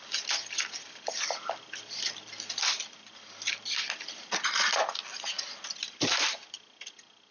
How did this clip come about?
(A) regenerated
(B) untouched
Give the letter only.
B